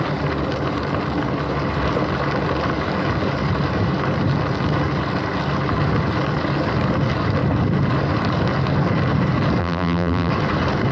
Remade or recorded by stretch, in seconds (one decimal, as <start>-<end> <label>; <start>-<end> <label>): 0.0-9.6 recorded; 9.6-10.3 remade; 10.3-10.9 recorded